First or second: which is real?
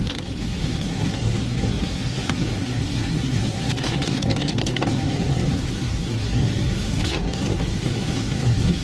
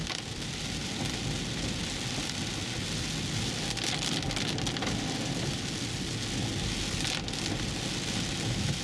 second